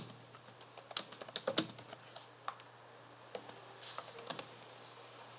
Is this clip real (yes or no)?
yes